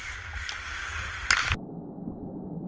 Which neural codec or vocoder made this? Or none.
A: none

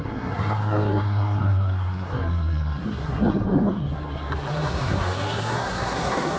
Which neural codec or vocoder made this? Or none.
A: codec, SNAC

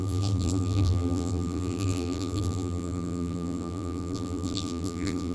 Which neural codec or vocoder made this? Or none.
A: vocoder, BigVGAN v2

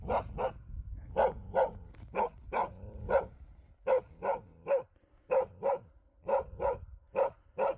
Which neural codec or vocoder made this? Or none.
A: none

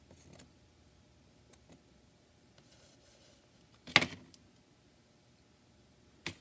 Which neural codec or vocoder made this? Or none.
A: none